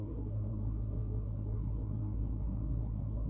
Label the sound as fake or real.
fake